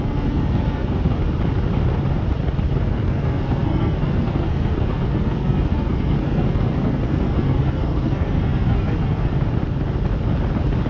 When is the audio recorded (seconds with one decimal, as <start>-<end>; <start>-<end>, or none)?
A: 1.2-2.8; 9.3-10.9